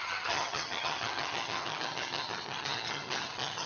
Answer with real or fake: fake